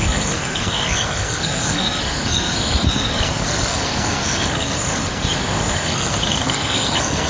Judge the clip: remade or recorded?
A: remade